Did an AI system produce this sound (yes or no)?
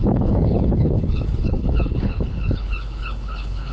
yes